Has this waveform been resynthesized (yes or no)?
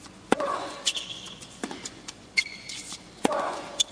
yes